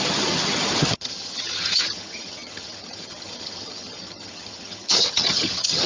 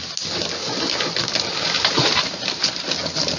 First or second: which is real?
second